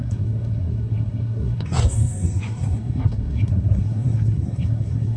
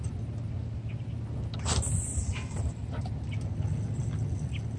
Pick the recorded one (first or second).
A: second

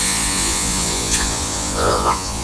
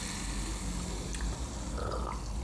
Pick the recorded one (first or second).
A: second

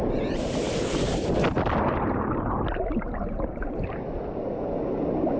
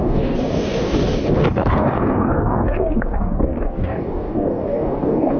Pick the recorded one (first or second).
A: first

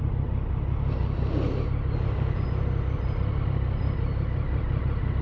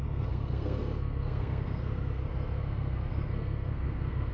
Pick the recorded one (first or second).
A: first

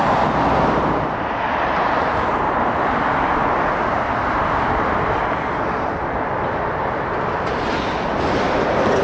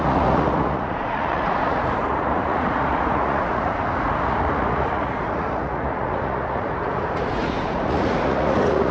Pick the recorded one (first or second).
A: first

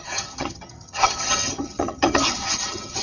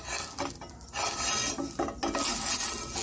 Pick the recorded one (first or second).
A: second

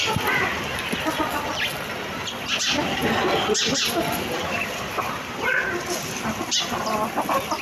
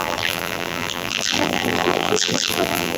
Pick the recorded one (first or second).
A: first